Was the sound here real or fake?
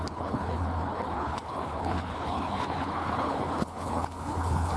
fake